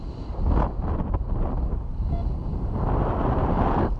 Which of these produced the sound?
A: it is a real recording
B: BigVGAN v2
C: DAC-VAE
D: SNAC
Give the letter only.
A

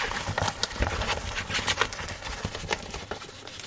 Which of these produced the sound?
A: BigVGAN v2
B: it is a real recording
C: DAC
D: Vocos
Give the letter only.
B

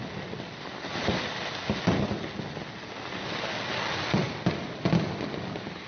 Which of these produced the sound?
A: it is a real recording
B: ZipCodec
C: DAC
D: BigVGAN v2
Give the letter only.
A